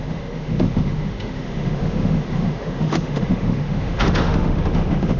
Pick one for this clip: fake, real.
fake